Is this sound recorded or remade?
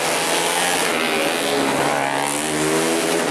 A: recorded